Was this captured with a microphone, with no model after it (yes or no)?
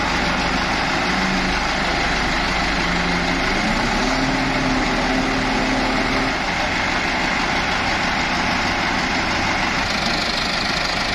yes